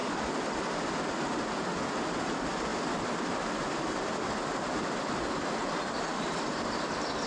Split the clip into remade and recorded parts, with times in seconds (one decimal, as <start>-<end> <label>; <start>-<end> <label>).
0.0-7.3 recorded